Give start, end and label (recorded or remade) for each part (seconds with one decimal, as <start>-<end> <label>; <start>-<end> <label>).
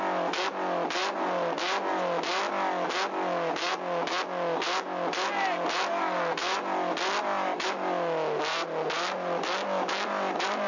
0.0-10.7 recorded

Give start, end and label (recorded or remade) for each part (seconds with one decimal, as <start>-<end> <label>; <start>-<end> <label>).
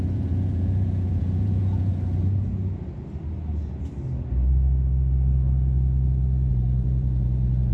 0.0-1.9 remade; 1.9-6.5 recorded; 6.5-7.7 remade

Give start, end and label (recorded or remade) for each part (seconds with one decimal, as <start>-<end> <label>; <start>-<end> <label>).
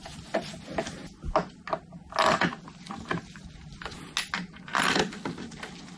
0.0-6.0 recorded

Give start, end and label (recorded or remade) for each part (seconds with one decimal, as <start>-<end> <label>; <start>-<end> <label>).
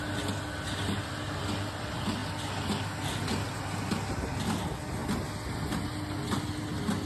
0.0-7.1 recorded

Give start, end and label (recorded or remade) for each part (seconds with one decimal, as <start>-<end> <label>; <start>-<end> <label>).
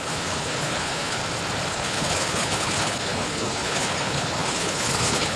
0.0-1.2 remade; 1.2-1.7 recorded; 1.7-5.4 remade